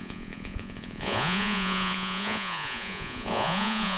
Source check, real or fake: fake